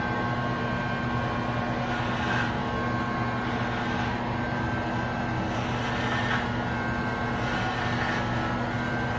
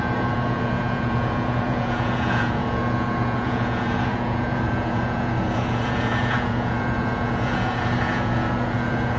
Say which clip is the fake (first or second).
second